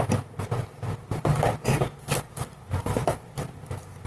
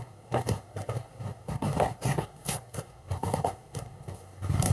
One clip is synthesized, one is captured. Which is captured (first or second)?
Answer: first